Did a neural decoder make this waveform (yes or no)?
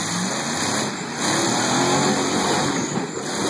no